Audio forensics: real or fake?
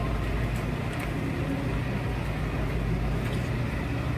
real